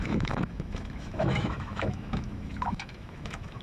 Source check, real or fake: fake